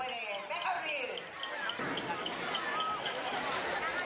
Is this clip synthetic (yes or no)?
no